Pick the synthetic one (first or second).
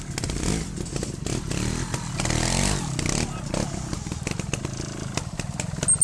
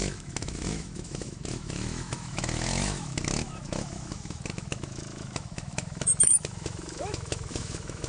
second